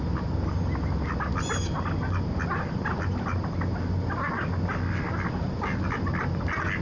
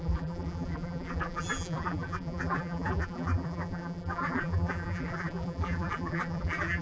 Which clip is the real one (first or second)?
first